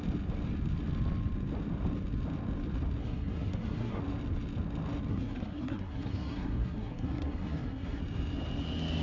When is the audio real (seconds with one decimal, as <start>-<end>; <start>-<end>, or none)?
0.0-3.0; 4.0-5.1; 8.0-9.0